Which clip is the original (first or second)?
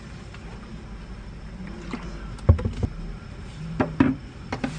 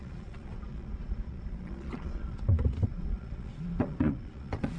first